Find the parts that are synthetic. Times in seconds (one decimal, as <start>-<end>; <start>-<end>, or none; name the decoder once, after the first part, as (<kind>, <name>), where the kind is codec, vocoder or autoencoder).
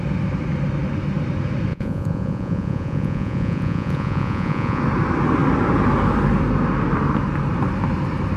1.7-4.8 (vocoder, Vocos)